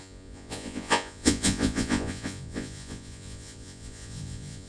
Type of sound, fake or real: fake